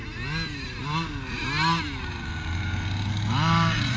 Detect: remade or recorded recorded